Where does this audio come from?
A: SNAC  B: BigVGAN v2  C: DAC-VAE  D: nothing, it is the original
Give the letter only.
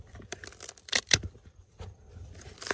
B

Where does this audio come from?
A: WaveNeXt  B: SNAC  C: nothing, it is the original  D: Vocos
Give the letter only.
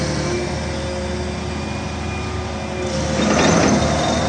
C